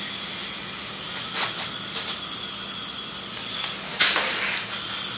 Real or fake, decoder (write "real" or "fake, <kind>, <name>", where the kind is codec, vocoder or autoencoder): real